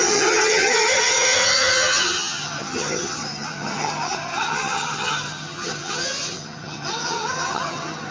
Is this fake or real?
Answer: fake